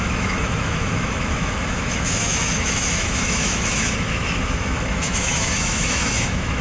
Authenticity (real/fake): fake